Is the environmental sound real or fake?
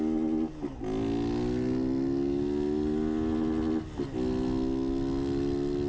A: real